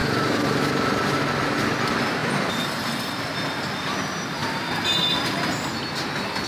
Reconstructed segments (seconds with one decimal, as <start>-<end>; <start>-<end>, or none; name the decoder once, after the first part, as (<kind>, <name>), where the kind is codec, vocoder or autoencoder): 0.0-0.6 (vocoder, BigVGAN v2); 2.2-2.9